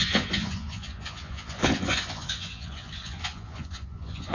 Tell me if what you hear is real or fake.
fake